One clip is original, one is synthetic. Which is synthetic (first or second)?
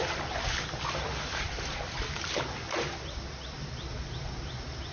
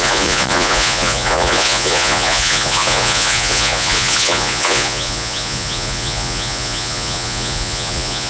second